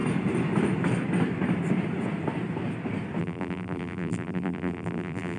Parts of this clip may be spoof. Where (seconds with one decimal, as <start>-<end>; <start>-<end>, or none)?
3.2-5.4